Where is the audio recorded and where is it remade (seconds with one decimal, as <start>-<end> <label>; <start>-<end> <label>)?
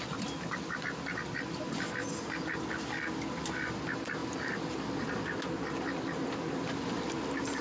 0.0-7.6 recorded